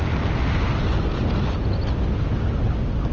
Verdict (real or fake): real